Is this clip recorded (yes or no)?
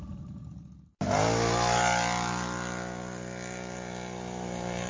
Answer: yes